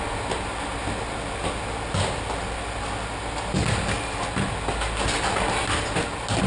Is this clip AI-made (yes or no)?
no